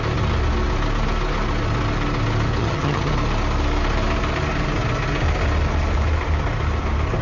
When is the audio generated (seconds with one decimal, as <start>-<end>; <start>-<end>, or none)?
2.6-3.1